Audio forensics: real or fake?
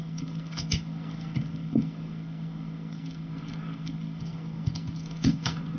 fake